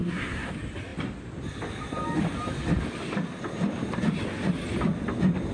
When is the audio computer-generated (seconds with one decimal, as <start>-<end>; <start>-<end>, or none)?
0.0-0.5